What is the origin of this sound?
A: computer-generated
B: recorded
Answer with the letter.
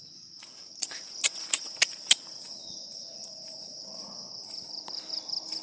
A